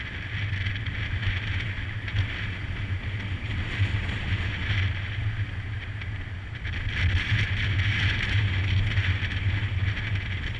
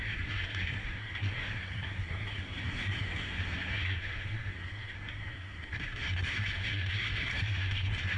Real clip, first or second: first